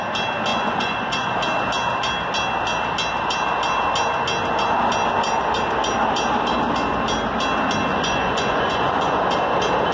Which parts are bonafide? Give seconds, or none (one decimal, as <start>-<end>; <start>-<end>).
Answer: 0.0-0.5; 1.3-7.9; 9.2-9.9